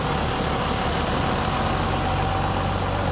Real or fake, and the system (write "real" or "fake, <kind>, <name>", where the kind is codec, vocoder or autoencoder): real